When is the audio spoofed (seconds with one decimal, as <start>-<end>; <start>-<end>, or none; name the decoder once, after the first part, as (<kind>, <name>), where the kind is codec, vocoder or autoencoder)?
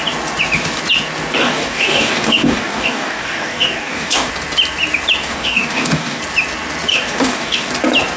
1.4-4.3 (codec, DAC); 5.2-6.2; 6.9-7.7